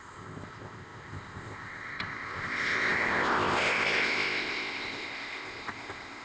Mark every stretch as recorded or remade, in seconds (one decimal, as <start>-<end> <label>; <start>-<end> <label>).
0.0-6.2 remade

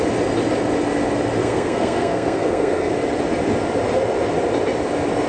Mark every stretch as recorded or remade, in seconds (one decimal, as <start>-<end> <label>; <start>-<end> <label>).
0.0-1.4 recorded; 1.4-2.9 remade; 2.9-5.3 recorded